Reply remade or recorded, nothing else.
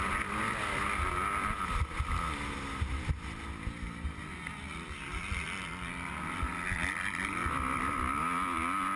recorded